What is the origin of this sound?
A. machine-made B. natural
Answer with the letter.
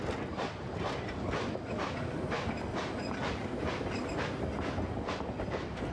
B